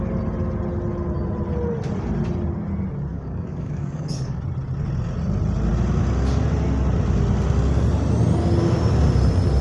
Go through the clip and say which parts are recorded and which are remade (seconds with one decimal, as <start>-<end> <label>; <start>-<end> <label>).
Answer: 0.0-3.1 recorded; 3.1-4.4 remade; 4.4-9.6 recorded